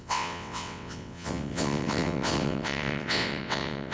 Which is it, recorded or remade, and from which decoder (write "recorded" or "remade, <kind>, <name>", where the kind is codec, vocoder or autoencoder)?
remade, vocoder, WaveNeXt